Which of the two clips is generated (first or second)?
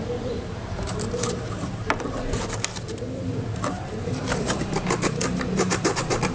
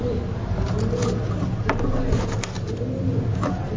first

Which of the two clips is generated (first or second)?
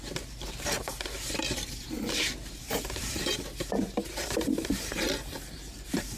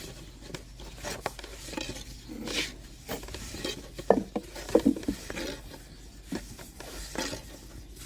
first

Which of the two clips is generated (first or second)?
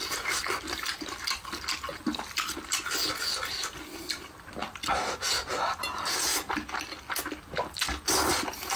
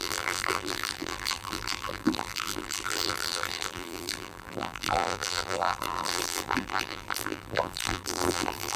second